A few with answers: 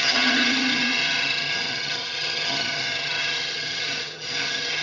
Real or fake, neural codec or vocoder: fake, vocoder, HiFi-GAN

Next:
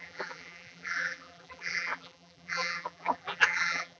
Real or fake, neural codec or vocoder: fake, vocoder, BigVGAN v2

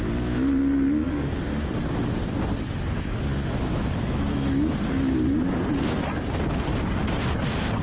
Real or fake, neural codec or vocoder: real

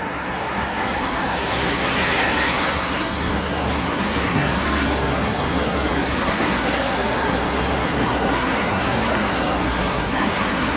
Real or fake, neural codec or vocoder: fake, codec, SNAC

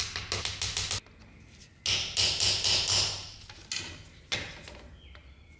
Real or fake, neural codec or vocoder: real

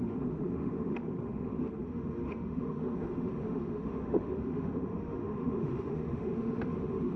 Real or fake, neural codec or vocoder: fake, autoencoder, DAC-VAE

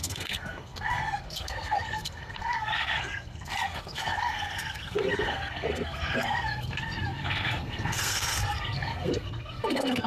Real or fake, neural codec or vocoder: fake, codec, SNAC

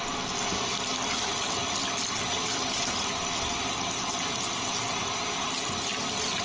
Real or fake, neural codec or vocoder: real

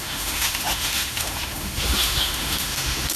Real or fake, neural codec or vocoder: fake, autoencoder, DAC-VAE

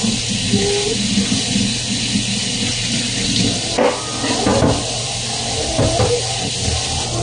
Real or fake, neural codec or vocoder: real